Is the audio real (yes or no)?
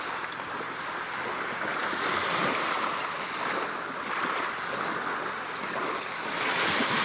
yes